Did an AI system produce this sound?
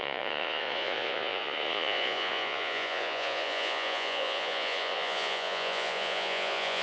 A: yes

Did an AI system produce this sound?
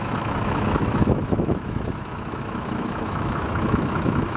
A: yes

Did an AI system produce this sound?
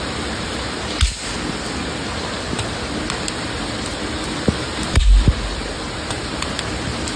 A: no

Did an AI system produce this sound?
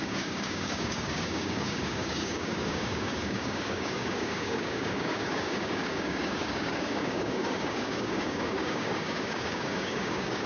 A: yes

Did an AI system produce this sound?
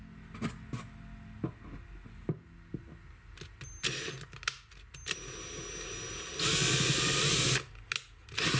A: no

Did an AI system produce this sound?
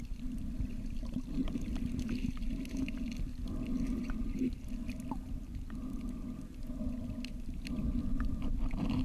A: no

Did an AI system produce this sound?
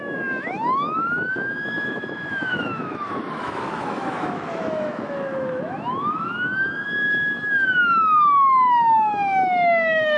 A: yes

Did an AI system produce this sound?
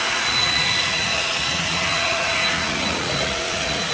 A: yes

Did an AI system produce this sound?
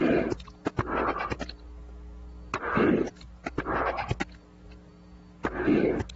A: no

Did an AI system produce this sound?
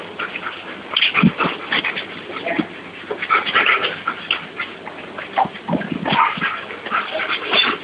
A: no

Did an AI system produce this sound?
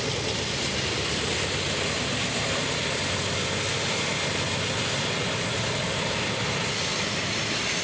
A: no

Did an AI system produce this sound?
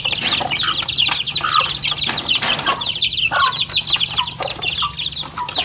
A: no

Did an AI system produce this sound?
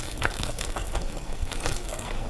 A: yes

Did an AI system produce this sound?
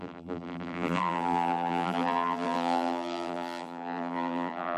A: yes